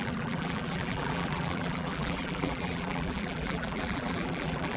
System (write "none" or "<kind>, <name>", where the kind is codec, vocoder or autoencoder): vocoder, BigVGAN v2